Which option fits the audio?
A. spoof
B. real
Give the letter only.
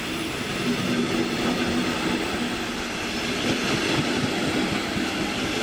B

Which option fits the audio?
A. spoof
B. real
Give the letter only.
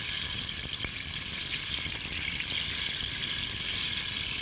B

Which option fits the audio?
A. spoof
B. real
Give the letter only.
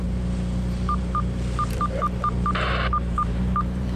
A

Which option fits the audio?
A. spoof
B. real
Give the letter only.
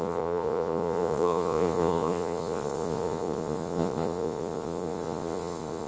A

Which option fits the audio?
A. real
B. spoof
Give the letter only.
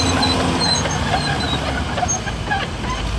A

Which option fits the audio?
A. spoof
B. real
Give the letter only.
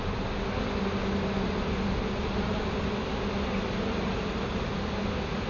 B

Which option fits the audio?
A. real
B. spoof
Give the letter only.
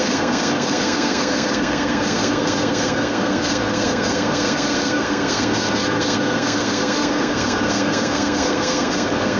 B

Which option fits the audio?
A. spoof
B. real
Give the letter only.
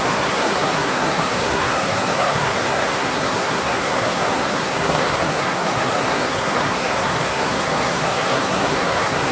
A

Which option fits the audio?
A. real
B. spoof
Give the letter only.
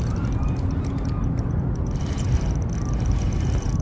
A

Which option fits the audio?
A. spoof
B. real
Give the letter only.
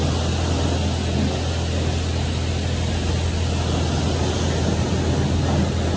B